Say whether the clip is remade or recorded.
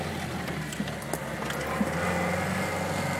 recorded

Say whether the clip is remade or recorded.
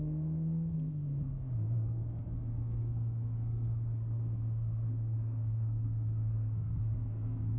remade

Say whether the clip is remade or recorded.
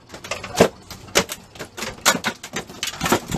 recorded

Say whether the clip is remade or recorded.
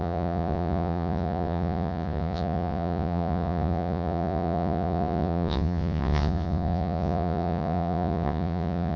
remade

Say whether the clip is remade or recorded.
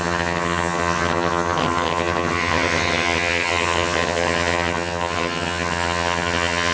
remade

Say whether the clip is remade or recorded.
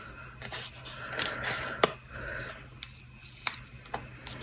recorded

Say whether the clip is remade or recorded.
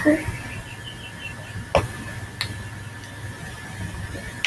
recorded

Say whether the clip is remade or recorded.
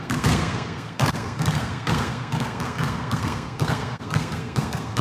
remade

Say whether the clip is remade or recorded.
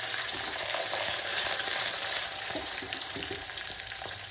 remade